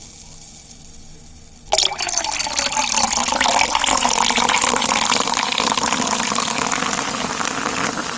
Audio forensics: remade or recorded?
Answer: recorded